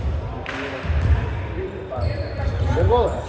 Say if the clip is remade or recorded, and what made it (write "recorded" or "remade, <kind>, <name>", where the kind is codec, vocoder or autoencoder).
recorded